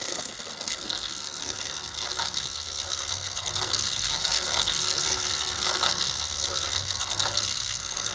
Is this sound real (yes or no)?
no